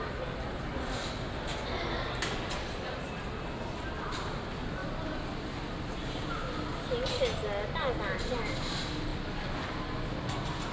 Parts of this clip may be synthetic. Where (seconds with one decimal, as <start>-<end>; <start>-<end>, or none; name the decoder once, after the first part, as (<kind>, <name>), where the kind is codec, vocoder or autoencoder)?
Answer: none